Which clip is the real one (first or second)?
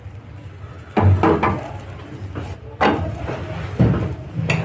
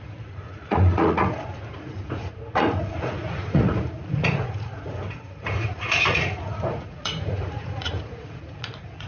first